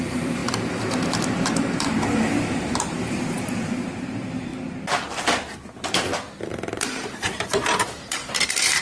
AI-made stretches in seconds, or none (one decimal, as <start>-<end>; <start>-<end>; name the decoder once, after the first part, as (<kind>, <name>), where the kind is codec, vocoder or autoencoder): 0.0-4.5 (vocoder, BigVGAN v2); 6.5-8.8